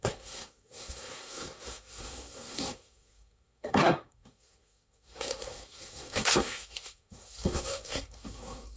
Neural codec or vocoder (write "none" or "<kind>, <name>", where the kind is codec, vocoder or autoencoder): codec, SNAC